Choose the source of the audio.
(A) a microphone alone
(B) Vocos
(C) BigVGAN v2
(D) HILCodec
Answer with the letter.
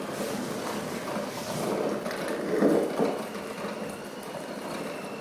A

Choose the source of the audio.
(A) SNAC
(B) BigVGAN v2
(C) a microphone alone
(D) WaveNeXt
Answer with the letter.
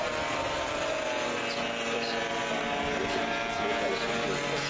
C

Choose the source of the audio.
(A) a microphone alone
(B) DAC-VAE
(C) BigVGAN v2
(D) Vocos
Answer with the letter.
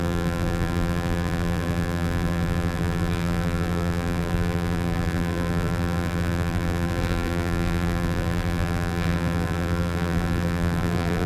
C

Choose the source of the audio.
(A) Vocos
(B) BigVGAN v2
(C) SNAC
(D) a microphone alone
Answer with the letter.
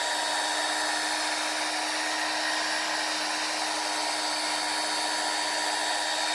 D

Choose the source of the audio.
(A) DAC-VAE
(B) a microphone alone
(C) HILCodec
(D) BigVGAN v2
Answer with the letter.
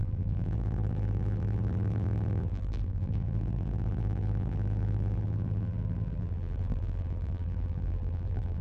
D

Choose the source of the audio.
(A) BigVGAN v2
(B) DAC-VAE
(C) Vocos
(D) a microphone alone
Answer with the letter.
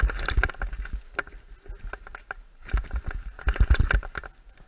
D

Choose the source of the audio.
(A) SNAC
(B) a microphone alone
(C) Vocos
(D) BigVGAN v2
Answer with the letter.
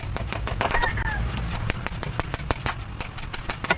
D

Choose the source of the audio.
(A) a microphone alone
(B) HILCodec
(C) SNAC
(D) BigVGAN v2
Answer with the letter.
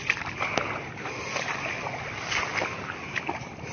A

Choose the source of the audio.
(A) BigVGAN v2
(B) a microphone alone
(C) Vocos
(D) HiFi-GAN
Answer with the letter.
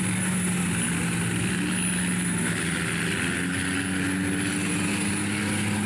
B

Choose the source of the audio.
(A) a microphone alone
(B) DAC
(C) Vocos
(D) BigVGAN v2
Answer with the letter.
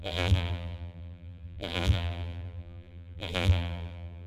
D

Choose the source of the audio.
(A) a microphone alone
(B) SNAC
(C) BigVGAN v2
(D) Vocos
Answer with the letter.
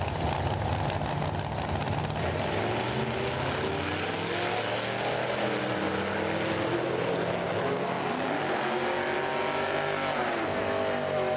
A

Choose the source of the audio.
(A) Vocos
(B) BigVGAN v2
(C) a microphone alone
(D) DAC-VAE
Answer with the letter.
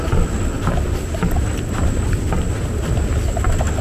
C